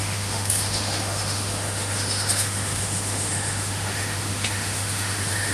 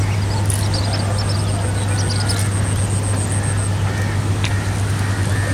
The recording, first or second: second